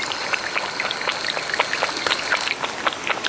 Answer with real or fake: real